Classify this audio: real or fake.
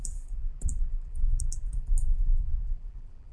fake